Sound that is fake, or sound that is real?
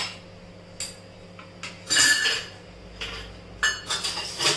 real